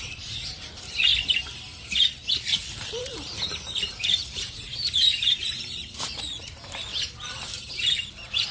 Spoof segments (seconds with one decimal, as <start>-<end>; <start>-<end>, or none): 0.0-1.1; 2.3-8.5